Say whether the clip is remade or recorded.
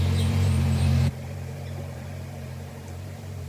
remade